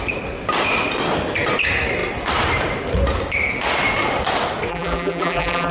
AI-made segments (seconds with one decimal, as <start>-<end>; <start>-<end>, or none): 4.7-5.7